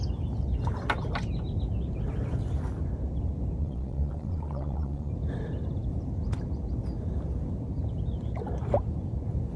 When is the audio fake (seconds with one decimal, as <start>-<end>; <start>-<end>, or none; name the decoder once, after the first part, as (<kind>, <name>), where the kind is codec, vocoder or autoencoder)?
3.6-5.1 (vocoder, Vocos)